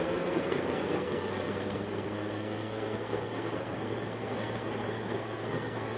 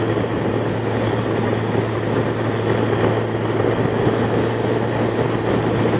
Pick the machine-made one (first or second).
first